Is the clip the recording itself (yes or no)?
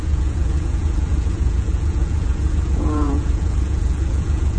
no